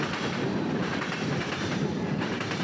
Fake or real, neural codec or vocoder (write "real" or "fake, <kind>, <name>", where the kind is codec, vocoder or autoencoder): fake, vocoder, BigVGAN v2